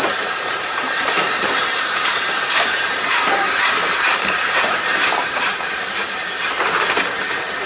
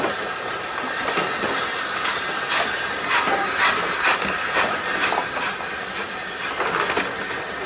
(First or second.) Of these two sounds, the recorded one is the second